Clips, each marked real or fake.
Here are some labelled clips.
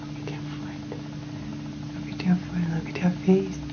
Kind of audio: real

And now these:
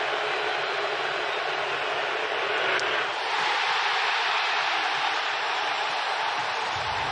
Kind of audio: real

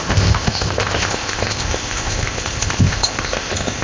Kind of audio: fake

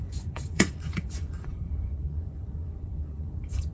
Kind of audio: fake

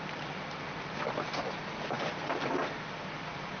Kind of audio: real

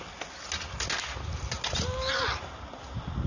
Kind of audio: real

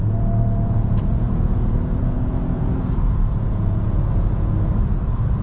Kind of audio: fake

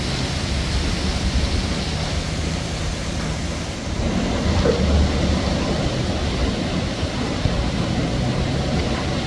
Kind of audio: real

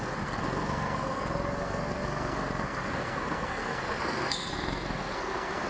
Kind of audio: fake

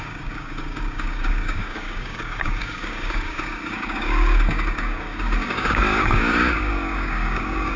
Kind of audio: fake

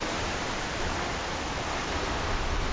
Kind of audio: real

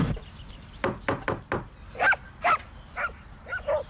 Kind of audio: real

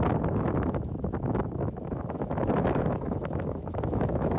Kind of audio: fake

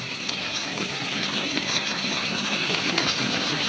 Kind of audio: fake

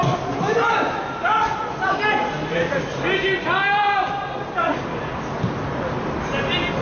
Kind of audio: real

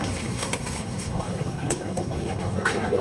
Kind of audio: fake